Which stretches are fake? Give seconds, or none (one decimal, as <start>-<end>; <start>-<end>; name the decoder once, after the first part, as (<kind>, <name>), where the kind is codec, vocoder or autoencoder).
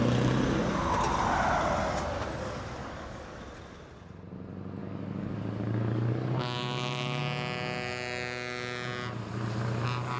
2.8-3.4 (codec, DAC); 4.8-7.2